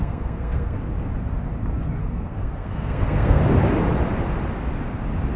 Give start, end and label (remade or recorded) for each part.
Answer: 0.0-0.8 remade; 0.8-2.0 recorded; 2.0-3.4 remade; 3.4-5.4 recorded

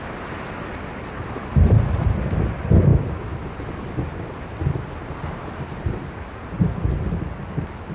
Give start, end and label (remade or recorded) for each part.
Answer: 0.0-7.9 recorded

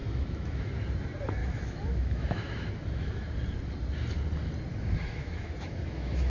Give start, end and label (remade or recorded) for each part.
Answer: 0.0-0.7 remade; 0.7-1.4 recorded; 1.4-3.2 remade; 3.2-4.7 recorded; 4.7-6.3 remade